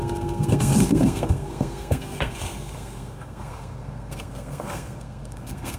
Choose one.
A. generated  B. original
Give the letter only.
A